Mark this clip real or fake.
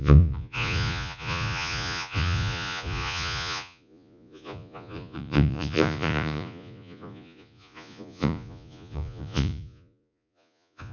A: fake